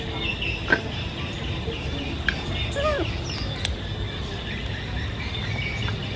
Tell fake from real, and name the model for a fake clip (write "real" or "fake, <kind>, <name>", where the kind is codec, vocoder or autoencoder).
real